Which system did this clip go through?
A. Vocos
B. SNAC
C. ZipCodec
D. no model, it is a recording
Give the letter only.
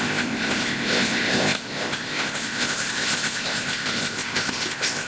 C